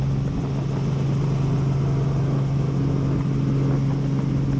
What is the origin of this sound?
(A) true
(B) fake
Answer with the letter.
A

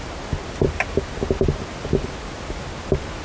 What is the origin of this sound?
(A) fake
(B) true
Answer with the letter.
B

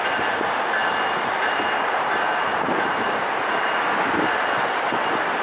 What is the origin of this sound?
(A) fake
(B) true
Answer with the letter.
B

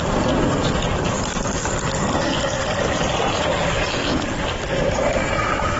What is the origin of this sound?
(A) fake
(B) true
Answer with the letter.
B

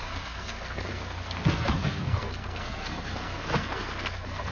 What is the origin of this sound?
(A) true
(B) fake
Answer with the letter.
B